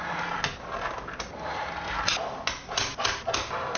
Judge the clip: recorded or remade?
recorded